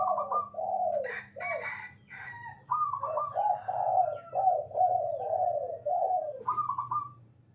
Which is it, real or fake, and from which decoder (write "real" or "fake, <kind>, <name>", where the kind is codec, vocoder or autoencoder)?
real